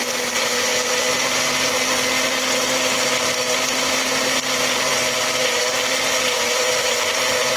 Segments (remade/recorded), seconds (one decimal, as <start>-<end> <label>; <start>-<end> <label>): 0.0-7.6 recorded